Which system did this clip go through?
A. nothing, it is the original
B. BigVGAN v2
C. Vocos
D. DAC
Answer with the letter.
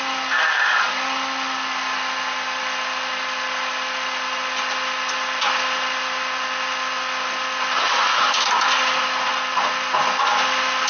A